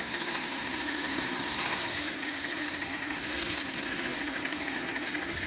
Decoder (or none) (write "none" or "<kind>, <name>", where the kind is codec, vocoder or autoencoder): codec, SNAC